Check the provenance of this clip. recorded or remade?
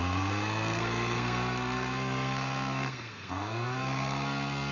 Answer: remade